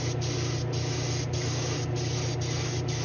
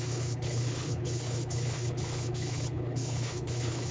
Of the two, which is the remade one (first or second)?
second